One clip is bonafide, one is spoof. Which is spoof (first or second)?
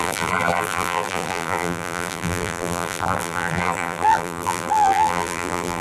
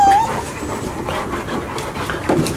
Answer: first